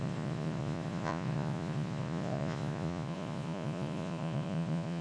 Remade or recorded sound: remade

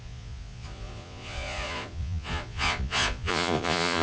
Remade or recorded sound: remade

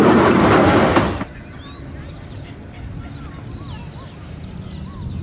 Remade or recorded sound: recorded